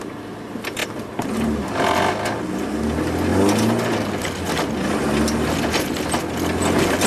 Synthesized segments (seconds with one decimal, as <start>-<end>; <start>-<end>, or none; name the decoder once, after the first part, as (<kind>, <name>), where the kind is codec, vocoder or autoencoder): none